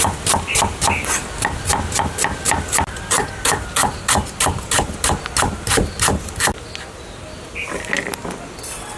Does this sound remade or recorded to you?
recorded